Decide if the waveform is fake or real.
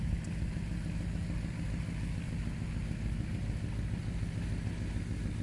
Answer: real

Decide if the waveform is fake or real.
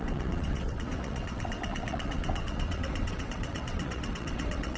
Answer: fake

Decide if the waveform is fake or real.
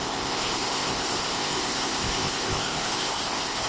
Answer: fake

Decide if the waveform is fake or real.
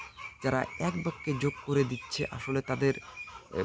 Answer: real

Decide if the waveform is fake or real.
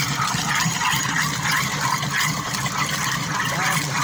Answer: real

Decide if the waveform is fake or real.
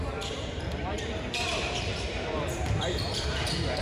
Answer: fake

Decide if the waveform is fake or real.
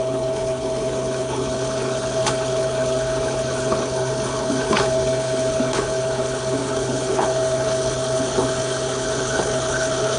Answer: fake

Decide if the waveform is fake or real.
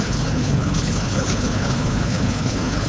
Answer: fake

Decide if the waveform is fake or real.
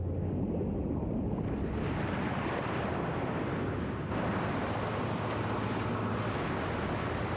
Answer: real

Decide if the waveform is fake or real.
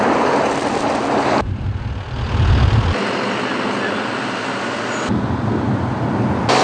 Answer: real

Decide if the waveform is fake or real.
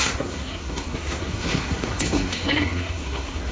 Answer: fake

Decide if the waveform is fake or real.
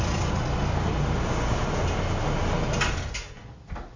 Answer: real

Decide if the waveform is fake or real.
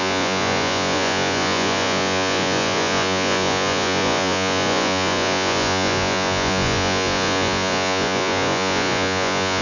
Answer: fake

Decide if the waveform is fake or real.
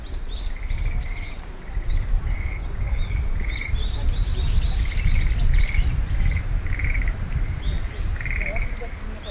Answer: real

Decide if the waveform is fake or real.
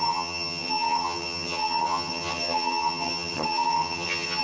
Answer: fake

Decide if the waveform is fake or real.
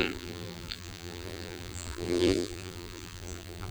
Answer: fake